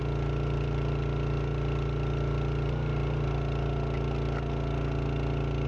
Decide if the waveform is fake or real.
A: real